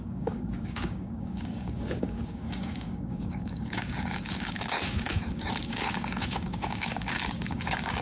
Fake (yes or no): yes